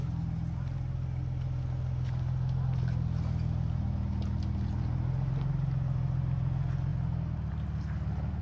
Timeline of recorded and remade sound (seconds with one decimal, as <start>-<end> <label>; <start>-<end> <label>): 0.0-8.4 recorded